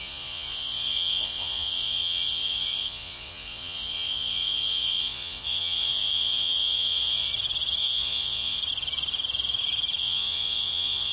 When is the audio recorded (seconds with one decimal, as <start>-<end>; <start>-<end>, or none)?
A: 7.3-7.8; 8.6-10.0